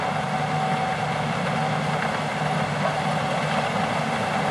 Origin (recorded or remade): recorded